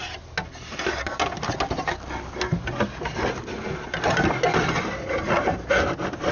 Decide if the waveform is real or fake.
real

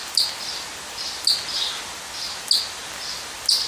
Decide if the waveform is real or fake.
real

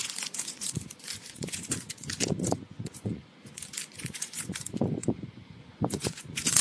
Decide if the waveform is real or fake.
fake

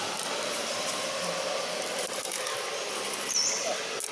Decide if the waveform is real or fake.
real